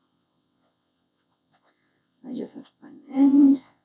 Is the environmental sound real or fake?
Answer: fake